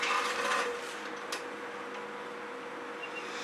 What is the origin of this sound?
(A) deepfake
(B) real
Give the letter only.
B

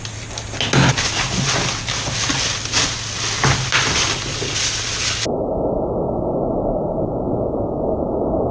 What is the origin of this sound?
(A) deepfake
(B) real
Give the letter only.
B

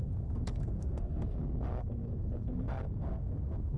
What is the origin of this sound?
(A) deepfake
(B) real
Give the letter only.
A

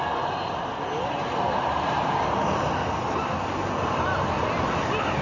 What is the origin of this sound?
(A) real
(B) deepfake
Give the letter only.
A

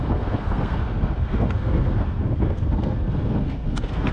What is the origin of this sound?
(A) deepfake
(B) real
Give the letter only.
A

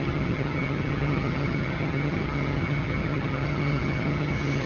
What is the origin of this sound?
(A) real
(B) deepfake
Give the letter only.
B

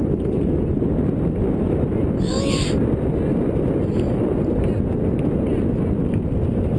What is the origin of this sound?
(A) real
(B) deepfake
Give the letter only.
A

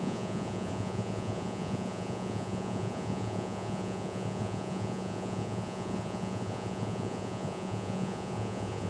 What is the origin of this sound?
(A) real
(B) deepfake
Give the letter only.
B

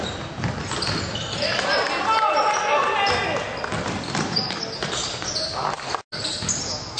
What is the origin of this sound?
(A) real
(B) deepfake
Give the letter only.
A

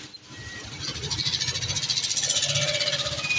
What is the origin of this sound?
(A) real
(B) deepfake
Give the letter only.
A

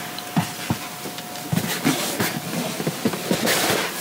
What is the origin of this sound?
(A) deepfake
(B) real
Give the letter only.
B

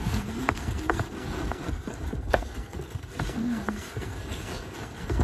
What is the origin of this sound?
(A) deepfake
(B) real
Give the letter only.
A